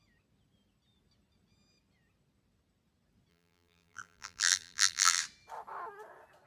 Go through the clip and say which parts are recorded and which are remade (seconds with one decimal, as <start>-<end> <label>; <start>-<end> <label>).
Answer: 0.0-3.3 recorded; 3.3-5.2 remade; 5.2-6.5 recorded